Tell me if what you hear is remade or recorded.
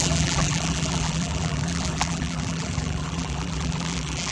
remade